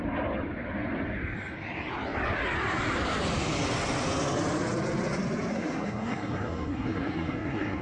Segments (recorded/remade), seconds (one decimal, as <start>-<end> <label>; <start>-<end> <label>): 0.0-5.5 recorded; 5.5-7.8 remade